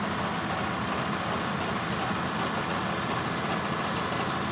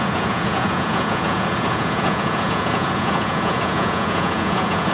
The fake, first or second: second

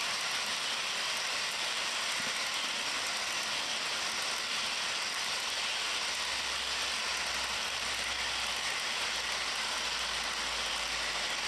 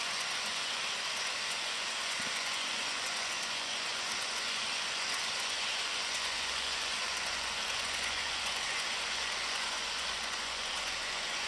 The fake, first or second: second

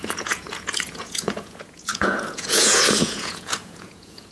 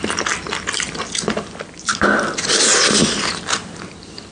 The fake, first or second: first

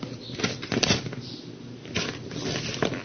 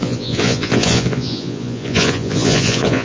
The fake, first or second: second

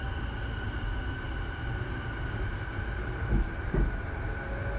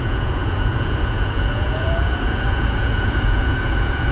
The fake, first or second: second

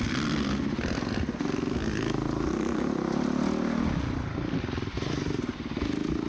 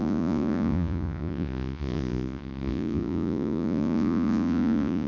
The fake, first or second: second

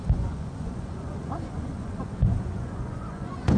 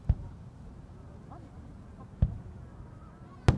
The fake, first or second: first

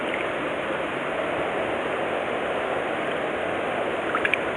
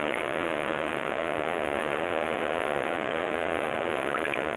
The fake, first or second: second